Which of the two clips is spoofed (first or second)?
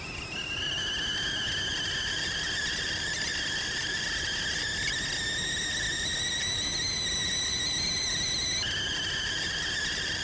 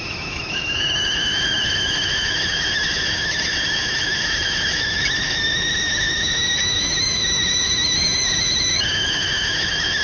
second